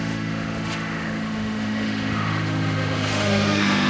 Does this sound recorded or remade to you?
remade